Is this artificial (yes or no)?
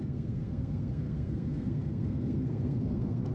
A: yes